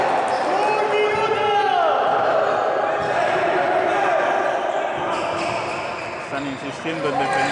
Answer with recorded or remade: recorded